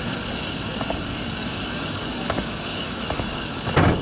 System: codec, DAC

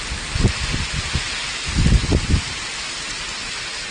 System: none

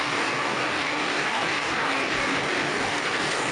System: codec, DAC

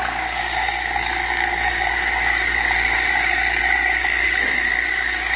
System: codec, DAC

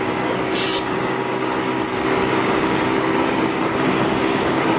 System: codec, DAC